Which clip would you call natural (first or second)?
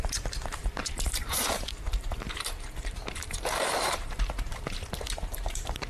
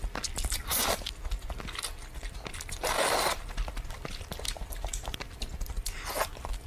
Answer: second